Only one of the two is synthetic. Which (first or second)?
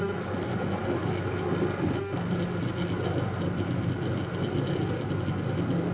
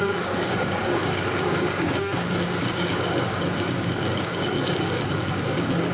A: second